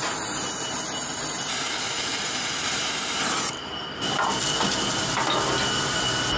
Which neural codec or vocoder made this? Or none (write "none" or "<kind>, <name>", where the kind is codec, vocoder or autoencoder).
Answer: none